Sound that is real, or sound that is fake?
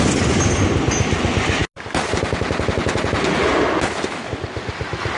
real